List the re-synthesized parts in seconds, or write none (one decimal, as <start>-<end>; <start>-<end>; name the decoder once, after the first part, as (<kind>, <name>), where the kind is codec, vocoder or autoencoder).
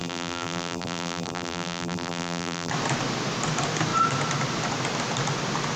0.0-2.7 (vocoder, BigVGAN v2)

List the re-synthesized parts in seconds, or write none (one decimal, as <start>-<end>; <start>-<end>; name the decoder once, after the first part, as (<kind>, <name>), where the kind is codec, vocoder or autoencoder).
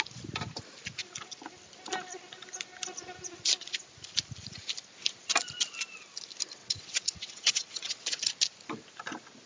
6.6-8.2 (vocoder, WaveNeXt)